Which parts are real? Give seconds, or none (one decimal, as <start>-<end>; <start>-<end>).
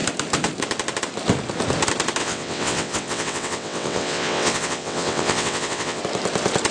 0.0-2.2; 6.0-6.7